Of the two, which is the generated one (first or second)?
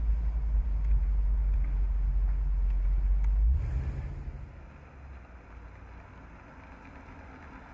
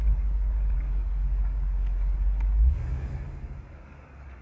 second